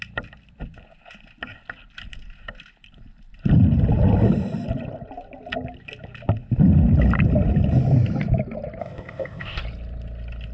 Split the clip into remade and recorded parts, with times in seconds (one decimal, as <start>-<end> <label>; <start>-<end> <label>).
0.0-8.8 recorded; 8.8-9.6 remade; 9.6-10.5 recorded

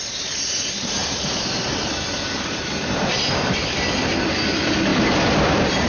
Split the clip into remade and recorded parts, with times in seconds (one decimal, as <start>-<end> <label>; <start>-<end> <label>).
0.0-5.9 recorded